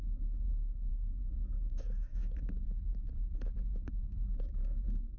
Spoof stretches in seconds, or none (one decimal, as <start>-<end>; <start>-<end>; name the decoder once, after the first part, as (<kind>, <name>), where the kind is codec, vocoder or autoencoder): 0.9-2.3 (autoencoder, DAC-VAE)